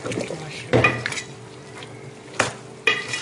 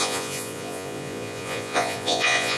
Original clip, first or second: first